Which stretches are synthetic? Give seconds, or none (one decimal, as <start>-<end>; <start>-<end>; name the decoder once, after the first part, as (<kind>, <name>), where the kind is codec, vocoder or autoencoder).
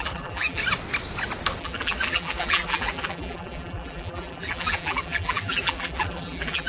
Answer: 0.0-0.6 (vocoder, BigVGAN v2); 1.6-6.7